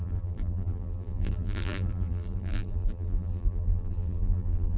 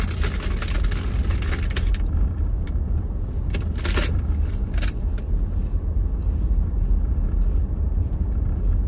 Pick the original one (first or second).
second